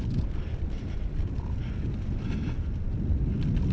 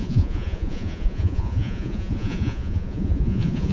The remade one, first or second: second